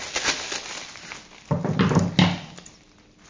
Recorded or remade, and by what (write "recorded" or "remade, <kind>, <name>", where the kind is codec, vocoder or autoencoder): recorded